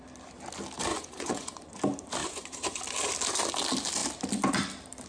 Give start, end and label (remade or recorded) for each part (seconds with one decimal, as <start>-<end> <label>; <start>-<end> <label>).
0.0-0.9 recorded; 0.9-1.7 remade; 1.7-2.2 recorded; 2.2-2.8 remade; 2.8-5.1 recorded